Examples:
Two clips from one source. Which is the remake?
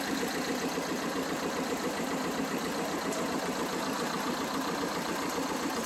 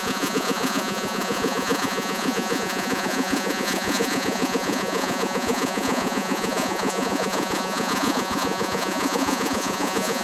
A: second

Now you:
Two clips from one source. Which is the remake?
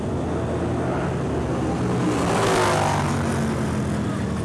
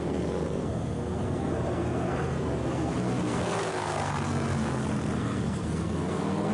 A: second